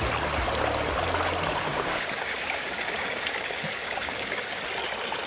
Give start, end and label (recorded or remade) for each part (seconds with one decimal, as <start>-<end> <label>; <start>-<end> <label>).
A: 0.0-1.7 recorded; 1.7-4.6 remade; 4.6-5.3 recorded